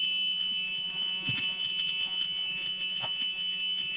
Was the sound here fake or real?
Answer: fake